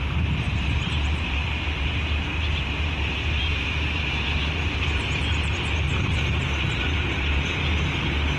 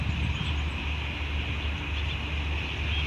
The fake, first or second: first